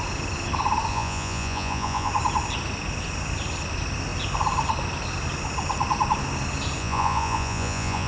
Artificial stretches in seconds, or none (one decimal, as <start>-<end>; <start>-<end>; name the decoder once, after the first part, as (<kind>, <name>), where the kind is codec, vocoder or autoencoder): 0.9-2.1 (vocoder, Vocos); 6.8-8.1